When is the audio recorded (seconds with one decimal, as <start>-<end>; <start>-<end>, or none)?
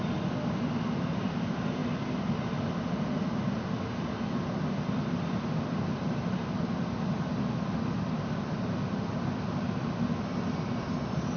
0.0-11.4